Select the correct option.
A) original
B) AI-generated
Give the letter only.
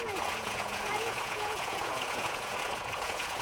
B